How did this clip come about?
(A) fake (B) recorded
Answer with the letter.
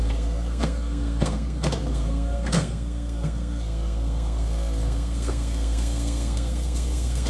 A